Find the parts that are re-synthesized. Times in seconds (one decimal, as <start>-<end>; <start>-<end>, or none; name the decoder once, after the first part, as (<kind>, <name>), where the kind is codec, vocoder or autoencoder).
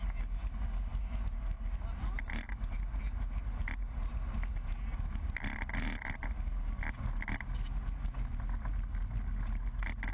none